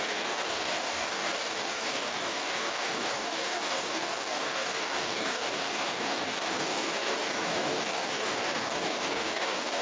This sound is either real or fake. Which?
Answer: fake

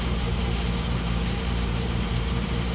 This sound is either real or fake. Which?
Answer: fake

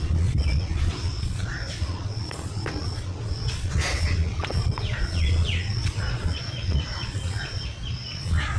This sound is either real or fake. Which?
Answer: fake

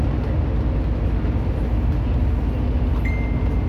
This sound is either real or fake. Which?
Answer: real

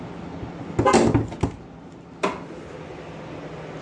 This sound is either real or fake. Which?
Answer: real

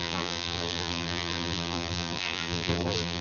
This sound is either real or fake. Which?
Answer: fake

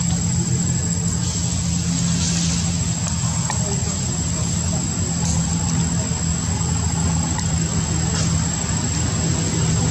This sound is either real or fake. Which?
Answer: real